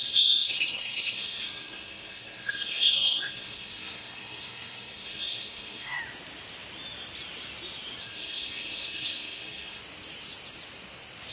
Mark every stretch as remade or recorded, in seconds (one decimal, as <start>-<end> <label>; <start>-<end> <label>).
0.0-6.0 remade; 6.0-8.0 recorded; 8.0-9.8 remade; 9.8-11.3 recorded